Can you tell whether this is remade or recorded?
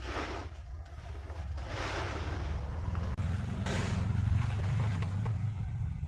recorded